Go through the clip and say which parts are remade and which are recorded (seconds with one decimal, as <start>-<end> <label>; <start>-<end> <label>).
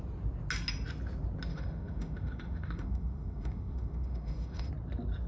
0.0-1.5 recorded; 1.5-4.7 remade; 4.7-5.3 recorded